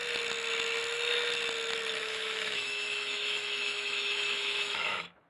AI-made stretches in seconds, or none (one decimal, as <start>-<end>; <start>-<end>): 2.0-5.3